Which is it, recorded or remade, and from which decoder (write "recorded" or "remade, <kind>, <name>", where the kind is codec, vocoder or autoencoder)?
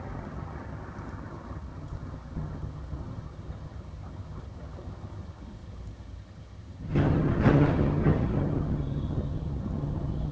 remade, vocoder, HiFi-GAN